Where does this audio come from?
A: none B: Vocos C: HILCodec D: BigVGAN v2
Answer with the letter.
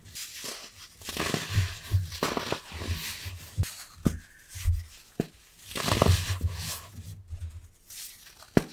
A